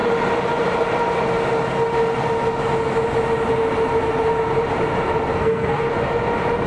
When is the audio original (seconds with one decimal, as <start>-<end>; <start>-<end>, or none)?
0.0-5.3; 5.9-6.7

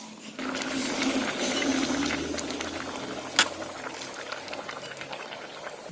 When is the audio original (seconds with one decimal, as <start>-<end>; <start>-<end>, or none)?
0.0-5.9

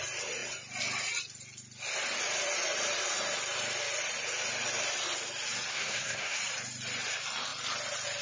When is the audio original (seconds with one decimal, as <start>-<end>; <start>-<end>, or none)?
0.0-5.7; 6.4-8.2

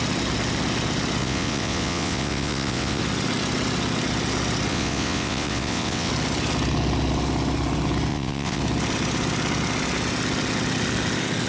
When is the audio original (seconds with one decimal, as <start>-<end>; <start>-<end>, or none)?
0.0-1.2; 3.0-4.7; 6.1-8.1; 8.6-11.5